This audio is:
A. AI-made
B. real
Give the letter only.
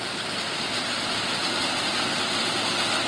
B